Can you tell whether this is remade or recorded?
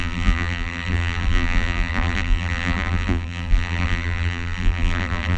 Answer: remade